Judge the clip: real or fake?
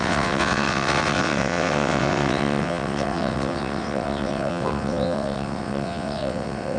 fake